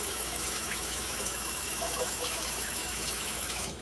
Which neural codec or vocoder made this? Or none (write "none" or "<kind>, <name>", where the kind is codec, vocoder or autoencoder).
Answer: autoencoder, DAC-VAE